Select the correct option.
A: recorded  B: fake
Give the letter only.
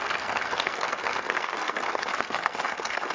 B